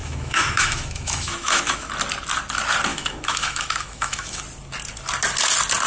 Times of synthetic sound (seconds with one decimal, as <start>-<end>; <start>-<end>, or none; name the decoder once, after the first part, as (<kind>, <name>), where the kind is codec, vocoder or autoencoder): 0.0-1.9 (autoencoder, DAC-VAE); 2.9-4.4